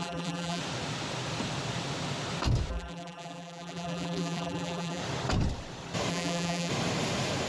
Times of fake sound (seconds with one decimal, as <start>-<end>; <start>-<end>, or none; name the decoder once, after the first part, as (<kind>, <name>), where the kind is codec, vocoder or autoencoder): 0.0-0.6 (vocoder, BigVGAN v2); 2.7-5.0; 6.1-6.7